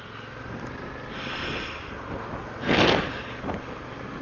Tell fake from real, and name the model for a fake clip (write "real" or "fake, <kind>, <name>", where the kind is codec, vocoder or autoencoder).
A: real